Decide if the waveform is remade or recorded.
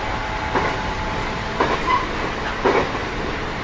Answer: recorded